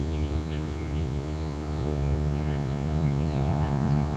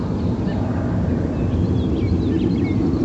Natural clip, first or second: second